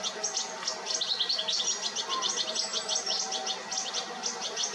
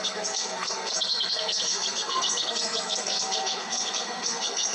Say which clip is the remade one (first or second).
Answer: second